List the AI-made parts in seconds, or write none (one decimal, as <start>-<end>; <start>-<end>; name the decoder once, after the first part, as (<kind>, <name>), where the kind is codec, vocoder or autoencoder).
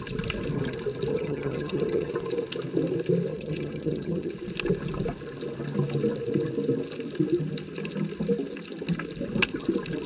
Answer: 1.1-2.1 (vocoder, HiFi-GAN); 3.3-4.3